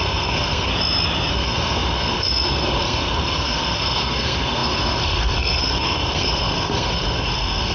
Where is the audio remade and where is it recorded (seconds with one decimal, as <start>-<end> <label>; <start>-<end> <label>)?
0.0-0.7 remade; 0.7-1.3 recorded; 1.3-7.7 remade